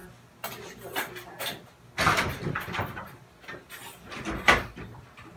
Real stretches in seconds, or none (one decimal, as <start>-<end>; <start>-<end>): 0.0-5.4